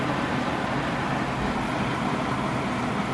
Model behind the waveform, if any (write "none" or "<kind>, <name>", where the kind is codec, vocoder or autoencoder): none